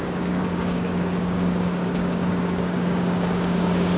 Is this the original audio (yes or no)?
no